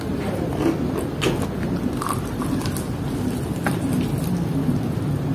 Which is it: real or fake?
real